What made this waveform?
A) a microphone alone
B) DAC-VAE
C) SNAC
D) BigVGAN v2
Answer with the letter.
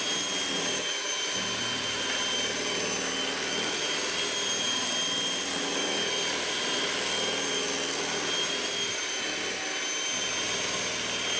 A